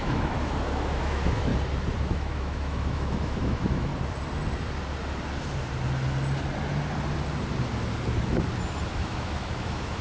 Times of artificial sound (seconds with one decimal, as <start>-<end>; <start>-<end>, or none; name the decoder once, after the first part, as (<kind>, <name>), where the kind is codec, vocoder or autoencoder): 0.0-1.5 (autoencoder, DAC-VAE); 2.0-3.9; 8.9-10.0